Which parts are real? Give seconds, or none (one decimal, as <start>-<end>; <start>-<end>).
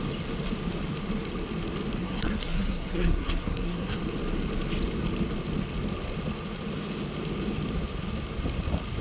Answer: 0.0-2.0; 4.0-9.0